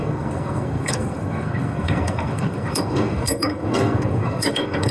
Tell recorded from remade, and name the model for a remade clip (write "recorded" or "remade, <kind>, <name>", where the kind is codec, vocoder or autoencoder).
remade, codec, SNAC